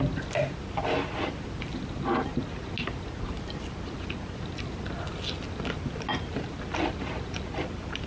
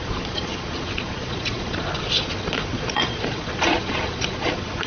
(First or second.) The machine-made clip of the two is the second